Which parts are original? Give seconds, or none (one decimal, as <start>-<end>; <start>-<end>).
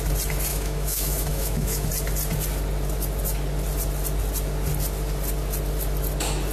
0.0-0.5; 1.9-6.5